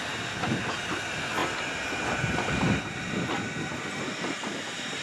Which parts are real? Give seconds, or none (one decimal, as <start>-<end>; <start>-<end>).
0.0-5.0